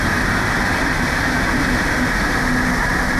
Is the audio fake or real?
real